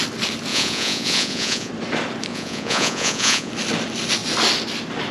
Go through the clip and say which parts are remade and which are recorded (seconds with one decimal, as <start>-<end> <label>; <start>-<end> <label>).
0.0-0.5 recorded; 0.5-1.7 remade; 1.7-2.3 recorded; 2.3-3.5 remade; 3.5-5.1 recorded